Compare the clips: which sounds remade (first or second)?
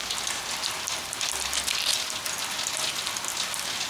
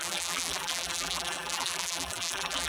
second